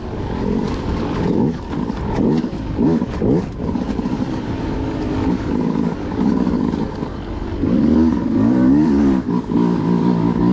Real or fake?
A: fake